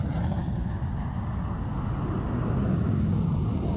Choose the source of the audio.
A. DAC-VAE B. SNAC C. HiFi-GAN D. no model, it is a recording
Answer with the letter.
D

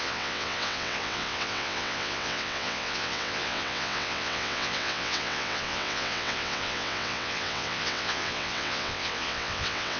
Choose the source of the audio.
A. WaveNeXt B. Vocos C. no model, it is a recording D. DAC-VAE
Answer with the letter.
A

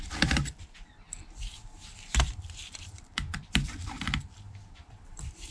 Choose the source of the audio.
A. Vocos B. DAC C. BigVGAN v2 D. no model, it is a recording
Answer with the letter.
C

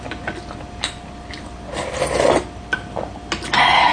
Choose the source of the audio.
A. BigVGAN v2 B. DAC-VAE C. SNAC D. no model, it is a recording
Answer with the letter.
D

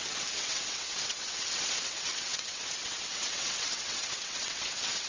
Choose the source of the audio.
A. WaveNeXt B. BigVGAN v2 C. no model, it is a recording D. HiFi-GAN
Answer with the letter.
A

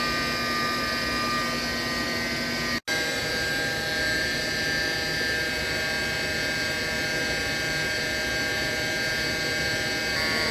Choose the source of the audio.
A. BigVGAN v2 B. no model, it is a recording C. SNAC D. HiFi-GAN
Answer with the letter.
B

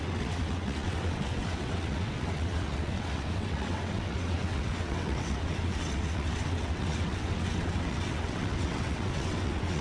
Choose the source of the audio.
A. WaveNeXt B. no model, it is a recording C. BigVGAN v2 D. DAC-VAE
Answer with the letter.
A